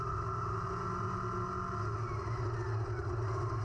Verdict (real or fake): real